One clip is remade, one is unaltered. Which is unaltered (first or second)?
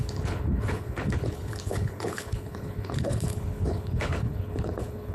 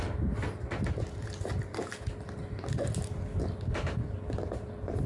second